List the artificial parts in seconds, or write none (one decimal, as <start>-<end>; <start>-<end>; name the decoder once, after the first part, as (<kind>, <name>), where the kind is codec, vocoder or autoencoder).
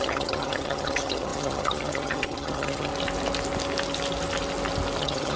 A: 0.0-2.9 (vocoder, HiFi-GAN); 5.0-5.4